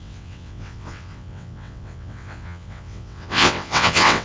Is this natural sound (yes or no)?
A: no